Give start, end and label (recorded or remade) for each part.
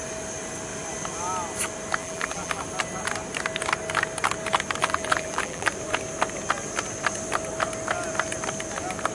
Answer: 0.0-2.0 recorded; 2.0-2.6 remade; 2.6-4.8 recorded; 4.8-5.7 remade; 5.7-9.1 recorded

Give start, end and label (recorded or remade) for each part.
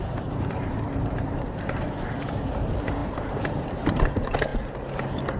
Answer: 0.0-4.5 remade; 4.5-5.4 recorded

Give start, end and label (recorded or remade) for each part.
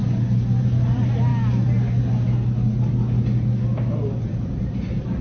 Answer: 0.0-0.6 recorded; 0.6-1.3 remade; 1.3-3.9 recorded; 3.9-5.2 remade